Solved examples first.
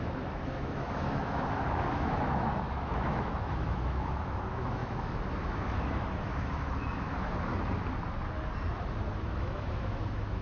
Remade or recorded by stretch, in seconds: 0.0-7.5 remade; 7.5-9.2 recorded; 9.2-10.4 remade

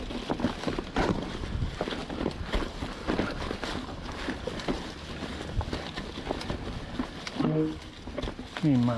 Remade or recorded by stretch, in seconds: 0.0-2.0 recorded; 2.0-5.1 remade; 5.1-9.0 recorded

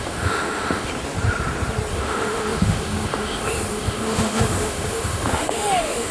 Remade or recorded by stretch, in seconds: 0.0-0.9 remade; 0.9-1.9 recorded; 1.9-6.1 remade

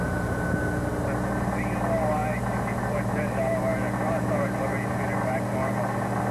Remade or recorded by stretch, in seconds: 0.0-6.3 recorded

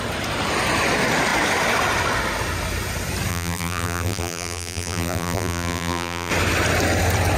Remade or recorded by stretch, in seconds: 0.0-3.3 recorded; 3.3-6.3 remade; 6.3-7.4 recorded

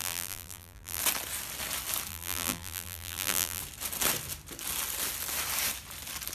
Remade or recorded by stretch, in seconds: 0.0-1.0 remade; 1.0-2.1 recorded; 2.1-3.6 remade; 3.6-6.3 recorded

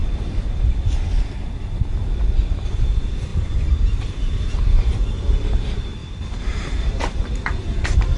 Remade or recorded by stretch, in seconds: 0.0-3.3 recorded; 3.3-4.0 remade; 4.0-6.0 recorded; 6.0-8.2 remade